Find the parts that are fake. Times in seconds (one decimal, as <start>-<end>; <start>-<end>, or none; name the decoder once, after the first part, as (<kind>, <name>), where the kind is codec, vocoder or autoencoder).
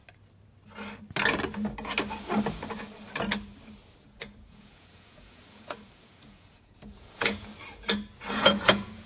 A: 4.0-7.5 (vocoder, Vocos); 8.3-9.1